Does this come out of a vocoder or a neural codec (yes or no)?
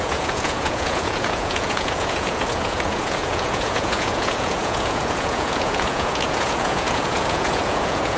yes